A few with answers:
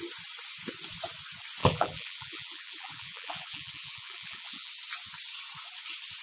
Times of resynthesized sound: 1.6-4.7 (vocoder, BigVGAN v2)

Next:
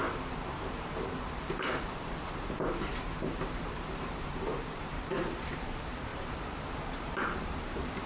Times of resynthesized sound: 0.0-8.1 (vocoder, BigVGAN v2)

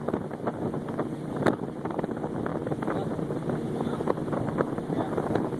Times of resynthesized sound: 2.5-5.1 (vocoder, BigVGAN v2)

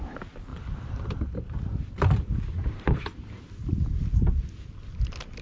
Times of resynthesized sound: 0.5-3.7 (vocoder, BigVGAN v2)

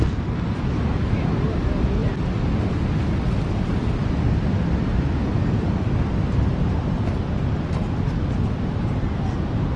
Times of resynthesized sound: none